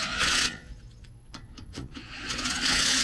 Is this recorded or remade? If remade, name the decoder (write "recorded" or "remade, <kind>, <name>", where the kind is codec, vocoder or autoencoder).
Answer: remade, vocoder, Vocos